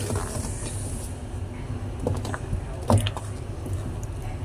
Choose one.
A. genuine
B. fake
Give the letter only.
A